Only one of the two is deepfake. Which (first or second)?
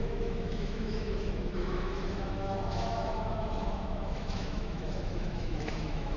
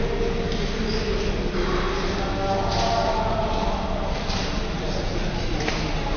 first